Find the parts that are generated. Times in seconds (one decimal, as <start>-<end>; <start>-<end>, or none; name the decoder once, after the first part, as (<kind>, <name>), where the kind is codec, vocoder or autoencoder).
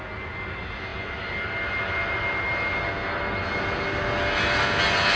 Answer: none